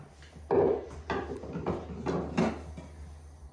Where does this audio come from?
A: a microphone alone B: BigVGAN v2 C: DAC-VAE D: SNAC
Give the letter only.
A